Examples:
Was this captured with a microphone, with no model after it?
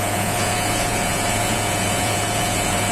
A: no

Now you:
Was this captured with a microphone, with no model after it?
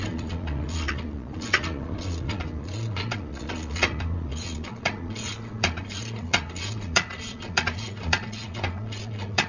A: no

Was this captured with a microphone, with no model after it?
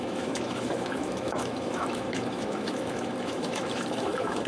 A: no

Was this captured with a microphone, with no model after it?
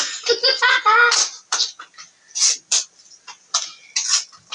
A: yes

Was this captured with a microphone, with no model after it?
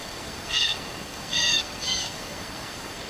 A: no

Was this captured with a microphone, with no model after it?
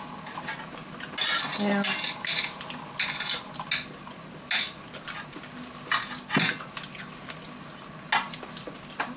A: yes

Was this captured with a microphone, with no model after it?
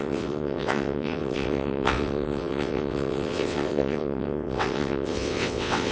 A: no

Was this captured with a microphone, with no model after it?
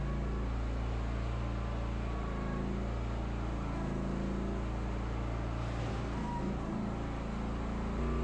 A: yes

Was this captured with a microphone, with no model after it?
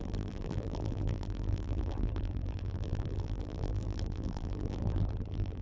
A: no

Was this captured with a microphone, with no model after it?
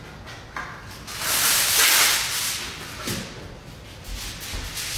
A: yes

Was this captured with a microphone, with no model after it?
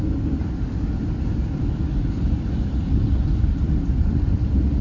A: yes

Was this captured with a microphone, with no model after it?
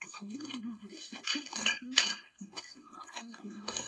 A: no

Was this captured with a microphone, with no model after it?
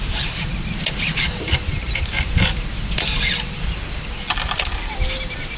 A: yes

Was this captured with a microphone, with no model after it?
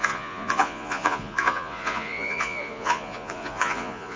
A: no